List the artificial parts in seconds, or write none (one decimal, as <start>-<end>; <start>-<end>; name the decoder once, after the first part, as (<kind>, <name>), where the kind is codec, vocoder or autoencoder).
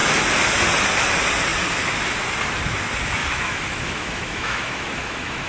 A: 3.2-5.5 (autoencoder, DAC-VAE)